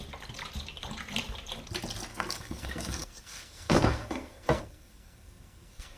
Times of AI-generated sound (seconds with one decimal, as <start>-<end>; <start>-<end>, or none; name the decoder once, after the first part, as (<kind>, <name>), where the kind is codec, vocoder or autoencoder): 2.1-6.0 (codec, SNAC)